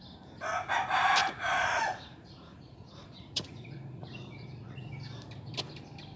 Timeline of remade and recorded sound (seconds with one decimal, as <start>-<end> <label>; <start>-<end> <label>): 0.0-1.2 recorded; 1.2-4.9 remade; 4.9-6.2 recorded